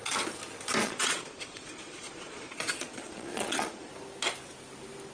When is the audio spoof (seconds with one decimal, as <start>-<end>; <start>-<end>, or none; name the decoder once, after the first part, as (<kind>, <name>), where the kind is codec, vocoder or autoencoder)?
0.8-3.9 (vocoder, Vocos)